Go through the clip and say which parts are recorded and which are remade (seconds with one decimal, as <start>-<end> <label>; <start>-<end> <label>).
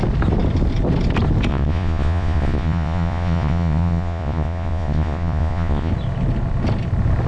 0.0-1.5 recorded; 1.5-5.9 remade; 5.9-7.3 recorded